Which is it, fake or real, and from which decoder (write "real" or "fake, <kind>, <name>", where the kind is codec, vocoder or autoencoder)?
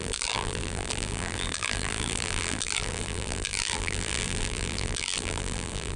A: fake, vocoder, BigVGAN v2